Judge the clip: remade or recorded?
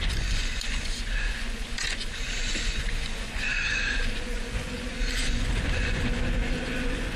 remade